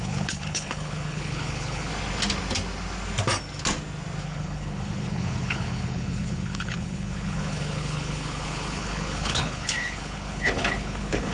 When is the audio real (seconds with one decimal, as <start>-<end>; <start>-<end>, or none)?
1.9-4.2

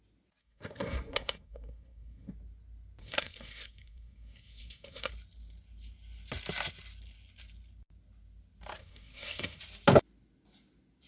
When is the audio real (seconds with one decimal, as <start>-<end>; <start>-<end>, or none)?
0.0-0.4; 2.3-3.0; 5.1-8.8; 9.6-11.1

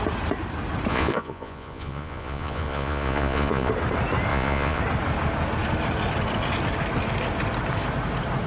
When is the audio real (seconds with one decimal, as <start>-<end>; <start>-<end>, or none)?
0.0-0.9; 3.7-4.3; 4.8-8.5

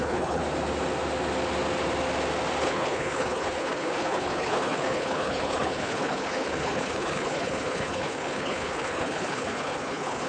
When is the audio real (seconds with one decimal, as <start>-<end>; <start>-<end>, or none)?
0.4-2.6

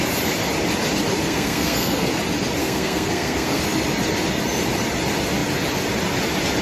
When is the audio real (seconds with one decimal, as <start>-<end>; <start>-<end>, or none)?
0.0-1.2; 2.1-2.6; 3.6-6.6